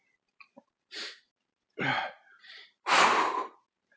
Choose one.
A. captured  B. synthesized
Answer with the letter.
B